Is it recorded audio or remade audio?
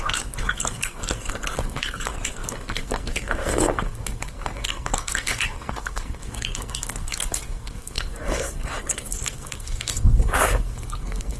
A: remade